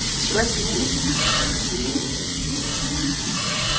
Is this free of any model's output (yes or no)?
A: no